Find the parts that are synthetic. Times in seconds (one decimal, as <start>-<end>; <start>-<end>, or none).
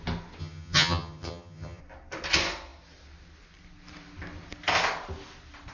0.4-1.8